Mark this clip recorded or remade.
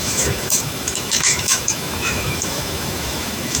remade